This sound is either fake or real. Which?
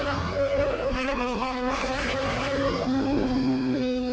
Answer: fake